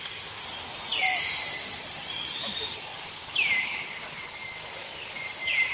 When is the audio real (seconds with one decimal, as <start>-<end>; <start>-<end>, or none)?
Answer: 0.0-2.4; 3.7-4.8